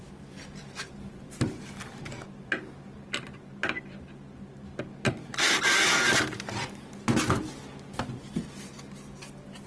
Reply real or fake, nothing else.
real